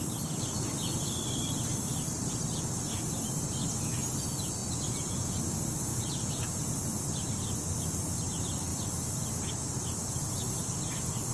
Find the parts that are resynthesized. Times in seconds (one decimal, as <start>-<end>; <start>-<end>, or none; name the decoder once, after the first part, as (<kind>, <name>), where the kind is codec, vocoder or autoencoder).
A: 4.6-5.4 (vocoder, Vocos)